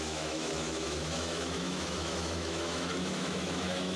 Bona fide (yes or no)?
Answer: no